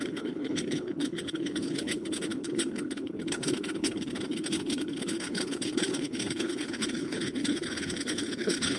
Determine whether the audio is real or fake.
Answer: fake